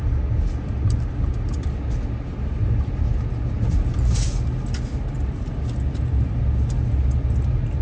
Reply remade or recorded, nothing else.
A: recorded